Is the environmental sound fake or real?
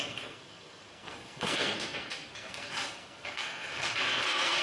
fake